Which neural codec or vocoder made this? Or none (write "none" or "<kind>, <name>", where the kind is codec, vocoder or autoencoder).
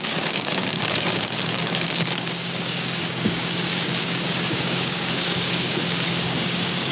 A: codec, DAC